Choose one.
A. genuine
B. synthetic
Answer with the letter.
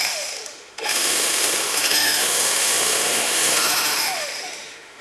B